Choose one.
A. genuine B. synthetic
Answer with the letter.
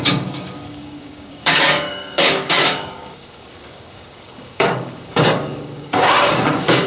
B